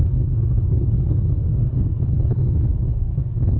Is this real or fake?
fake